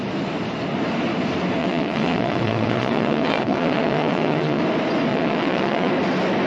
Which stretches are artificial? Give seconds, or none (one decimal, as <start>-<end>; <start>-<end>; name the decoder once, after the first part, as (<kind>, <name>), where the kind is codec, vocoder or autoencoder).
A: 1.6-4.6 (vocoder, WaveNeXt); 5.1-5.9

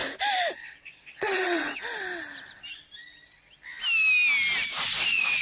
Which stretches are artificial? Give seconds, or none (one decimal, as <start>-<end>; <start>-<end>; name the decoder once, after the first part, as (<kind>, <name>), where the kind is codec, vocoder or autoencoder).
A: 0.5-1.8 (vocoder, WaveNeXt); 5.0-5.4

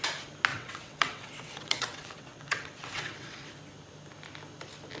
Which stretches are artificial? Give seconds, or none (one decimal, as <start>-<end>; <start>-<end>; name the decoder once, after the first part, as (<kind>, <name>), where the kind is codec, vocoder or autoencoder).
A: 0.5-3.5 (vocoder, WaveNeXt)

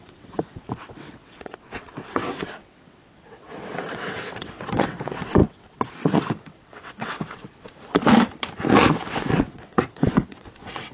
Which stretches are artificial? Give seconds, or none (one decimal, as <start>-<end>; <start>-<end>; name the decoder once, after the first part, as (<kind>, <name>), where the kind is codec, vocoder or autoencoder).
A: 0.0-7.4 (vocoder, WaveNeXt); 8.9-10.9

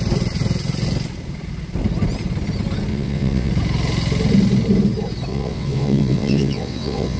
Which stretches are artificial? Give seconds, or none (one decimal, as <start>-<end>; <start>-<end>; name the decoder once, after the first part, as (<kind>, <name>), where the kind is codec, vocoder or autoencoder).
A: 2.9-3.5 (vocoder, WaveNeXt); 5.3-7.2